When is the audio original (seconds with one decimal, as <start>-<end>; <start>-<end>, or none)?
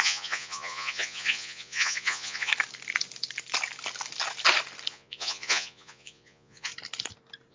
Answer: 2.5-4.9; 6.7-7.5